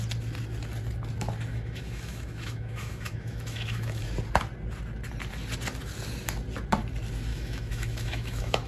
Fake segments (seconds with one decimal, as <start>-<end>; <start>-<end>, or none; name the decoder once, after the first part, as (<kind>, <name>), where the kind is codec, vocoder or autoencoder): 1.5-4.0 (autoencoder, DAC-VAE); 7.3-8.7